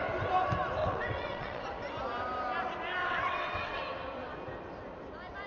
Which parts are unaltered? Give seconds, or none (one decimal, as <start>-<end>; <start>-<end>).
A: 0.0-0.8; 1.6-3.0; 3.8-5.5